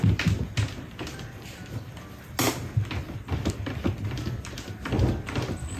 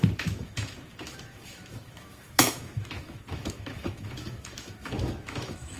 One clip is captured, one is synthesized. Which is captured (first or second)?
first